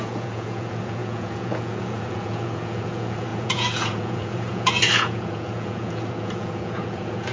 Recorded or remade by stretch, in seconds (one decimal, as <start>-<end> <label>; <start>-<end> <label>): 0.0-7.3 remade